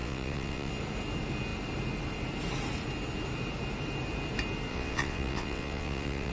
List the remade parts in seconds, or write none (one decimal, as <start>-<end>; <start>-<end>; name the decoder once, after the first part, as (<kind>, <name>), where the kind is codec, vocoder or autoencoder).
0.0-0.7 (vocoder, WaveNeXt); 4.7-6.3